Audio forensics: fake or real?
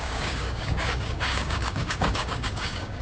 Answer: fake